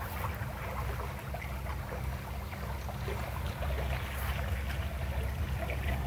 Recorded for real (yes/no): yes